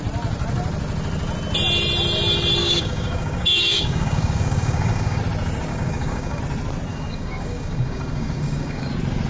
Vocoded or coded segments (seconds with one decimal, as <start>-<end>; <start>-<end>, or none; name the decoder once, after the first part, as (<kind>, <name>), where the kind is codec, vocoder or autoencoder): 2.6-5.2 (codec, DAC); 5.7-6.4; 6.9-8.9